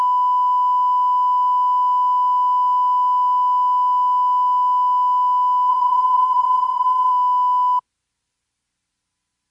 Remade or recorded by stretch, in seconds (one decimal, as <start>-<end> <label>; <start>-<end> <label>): 0.0-5.7 recorded; 5.7-7.1 remade; 7.1-9.5 recorded